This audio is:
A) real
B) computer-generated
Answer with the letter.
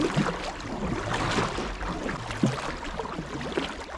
A